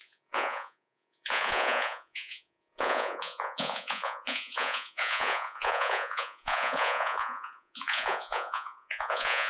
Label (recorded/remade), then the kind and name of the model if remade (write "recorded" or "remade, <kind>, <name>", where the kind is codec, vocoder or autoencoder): remade, vocoder, Vocos